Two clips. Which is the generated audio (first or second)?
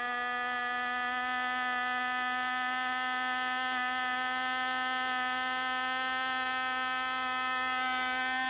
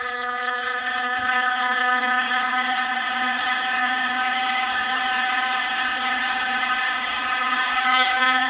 second